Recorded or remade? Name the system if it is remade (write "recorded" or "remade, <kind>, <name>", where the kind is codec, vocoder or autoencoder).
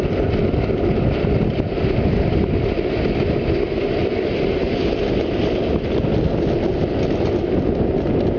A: recorded